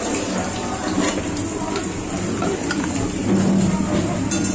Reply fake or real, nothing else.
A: real